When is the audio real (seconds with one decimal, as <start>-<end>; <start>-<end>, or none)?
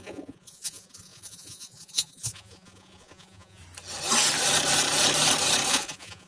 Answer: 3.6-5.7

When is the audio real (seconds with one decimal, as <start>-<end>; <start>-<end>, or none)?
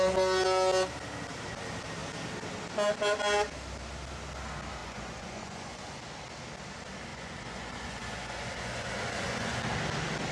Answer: 0.0-4.8; 6.0-7.1; 9.6-10.3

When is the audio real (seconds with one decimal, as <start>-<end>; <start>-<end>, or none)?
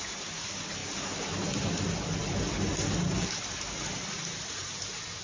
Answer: 0.0-5.2